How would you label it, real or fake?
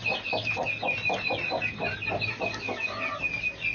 real